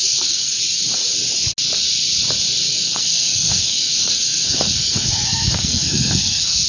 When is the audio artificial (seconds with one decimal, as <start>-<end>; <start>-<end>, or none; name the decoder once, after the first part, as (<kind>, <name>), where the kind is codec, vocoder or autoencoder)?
0.0-0.6 (codec, SNAC); 2.7-6.7